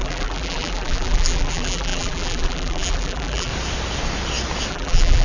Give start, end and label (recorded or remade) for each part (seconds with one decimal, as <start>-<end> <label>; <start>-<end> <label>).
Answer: 0.0-3.5 remade; 3.5-4.7 recorded; 4.7-5.2 remade